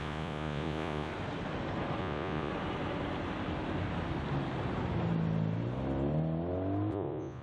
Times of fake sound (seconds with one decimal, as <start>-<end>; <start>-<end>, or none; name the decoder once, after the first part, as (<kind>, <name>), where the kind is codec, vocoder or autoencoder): 0.0-1.1 (vocoder, Vocos); 2.0-2.5; 6.9-7.4